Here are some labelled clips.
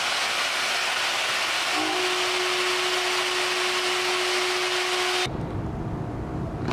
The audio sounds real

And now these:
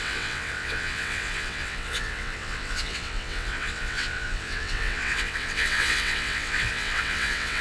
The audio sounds fake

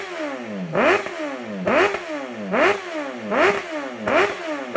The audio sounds real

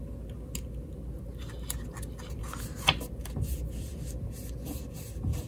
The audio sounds real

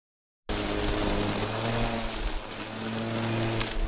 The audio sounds real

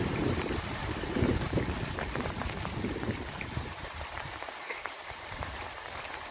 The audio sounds fake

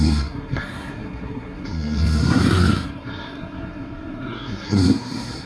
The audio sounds fake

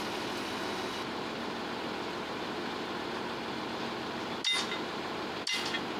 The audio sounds real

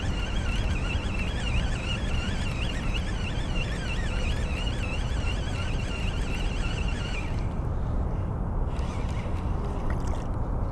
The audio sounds real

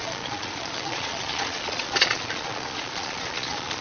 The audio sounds fake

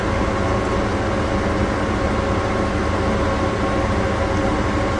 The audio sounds real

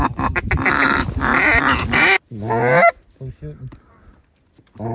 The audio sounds real